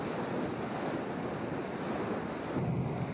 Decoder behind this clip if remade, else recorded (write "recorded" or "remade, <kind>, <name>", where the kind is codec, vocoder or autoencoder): recorded